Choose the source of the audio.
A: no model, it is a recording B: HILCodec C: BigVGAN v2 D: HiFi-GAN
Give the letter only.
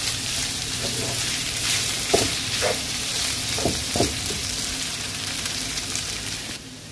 C